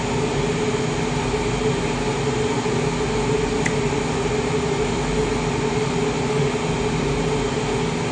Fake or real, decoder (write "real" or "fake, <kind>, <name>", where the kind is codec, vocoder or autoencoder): real